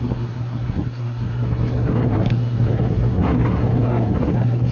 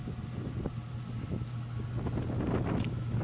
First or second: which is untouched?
second